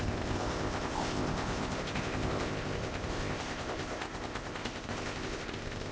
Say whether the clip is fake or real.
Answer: fake